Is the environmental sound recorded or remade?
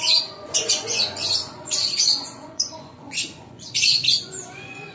remade